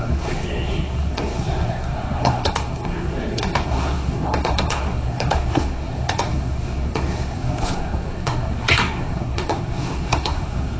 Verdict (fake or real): fake